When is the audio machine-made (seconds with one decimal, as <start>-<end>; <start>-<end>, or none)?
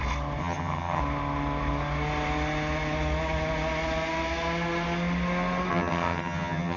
0.4-1.0; 5.7-6.8